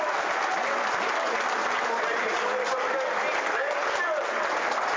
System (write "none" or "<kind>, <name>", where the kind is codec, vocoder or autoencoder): none